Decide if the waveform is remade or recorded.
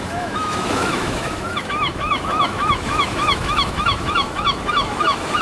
remade